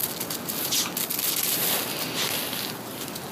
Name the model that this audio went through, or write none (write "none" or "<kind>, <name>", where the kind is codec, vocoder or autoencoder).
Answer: none